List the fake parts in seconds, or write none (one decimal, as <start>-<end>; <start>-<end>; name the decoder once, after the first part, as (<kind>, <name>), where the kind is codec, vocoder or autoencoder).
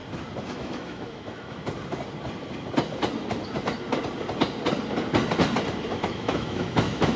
0.5-1.6 (autoencoder, DAC-VAE); 5.9-7.2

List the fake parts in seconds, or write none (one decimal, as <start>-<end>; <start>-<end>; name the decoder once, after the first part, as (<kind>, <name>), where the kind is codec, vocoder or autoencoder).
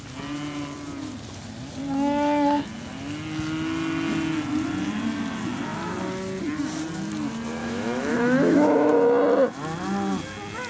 7.6-8.9 (autoencoder, DAC-VAE)